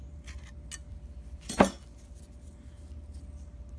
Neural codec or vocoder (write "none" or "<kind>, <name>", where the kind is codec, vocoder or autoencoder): none